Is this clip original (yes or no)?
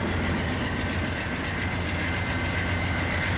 yes